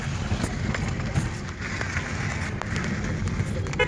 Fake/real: real